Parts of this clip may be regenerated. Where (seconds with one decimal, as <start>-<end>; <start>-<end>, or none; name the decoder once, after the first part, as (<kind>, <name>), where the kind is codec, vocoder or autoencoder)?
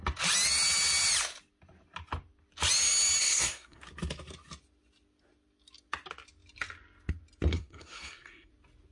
3.2-3.8 (codec, SNAC); 7.5-8.5